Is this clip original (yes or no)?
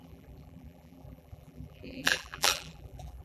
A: no